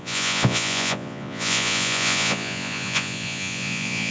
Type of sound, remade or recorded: remade